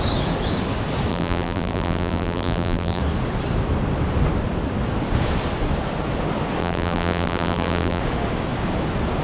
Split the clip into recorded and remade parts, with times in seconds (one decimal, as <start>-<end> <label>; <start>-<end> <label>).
0.0-1.1 recorded; 1.1-3.0 remade; 3.0-6.6 recorded; 6.6-8.0 remade; 8.0-9.2 recorded